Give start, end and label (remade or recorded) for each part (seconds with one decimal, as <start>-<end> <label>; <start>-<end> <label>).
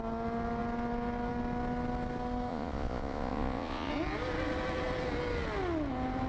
0.0-2.5 recorded; 2.5-3.9 remade; 3.9-6.3 recorded